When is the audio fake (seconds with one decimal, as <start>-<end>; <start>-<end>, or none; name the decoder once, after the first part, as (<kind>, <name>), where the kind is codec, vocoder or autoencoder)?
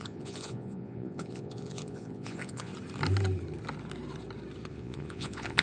0.0-2.7 (vocoder, Vocos); 4.7-5.6